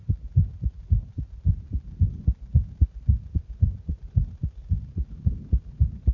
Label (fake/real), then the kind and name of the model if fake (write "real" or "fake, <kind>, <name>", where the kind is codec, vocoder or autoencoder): real